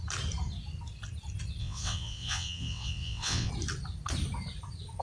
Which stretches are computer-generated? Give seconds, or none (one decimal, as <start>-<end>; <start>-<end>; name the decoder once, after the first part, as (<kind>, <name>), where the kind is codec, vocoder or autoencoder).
1.6-3.5 (vocoder, WaveNeXt)